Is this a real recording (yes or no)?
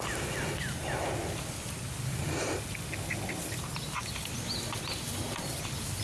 yes